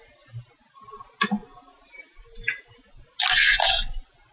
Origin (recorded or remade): recorded